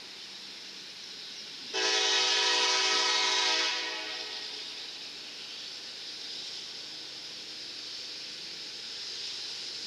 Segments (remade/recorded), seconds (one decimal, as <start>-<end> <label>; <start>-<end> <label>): 0.0-9.9 recorded